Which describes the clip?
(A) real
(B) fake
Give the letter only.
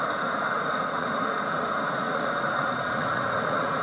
B